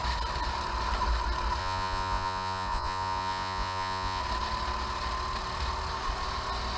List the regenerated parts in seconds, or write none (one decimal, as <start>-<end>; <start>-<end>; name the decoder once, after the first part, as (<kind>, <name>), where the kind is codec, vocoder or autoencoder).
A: 1.6-4.2 (vocoder, Vocos)